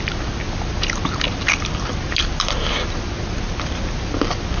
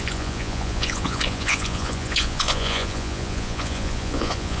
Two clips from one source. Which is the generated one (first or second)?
second